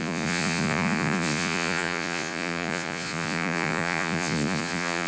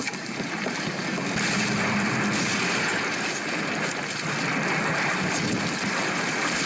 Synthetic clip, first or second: first